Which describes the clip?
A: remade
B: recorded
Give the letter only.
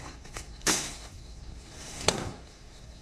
A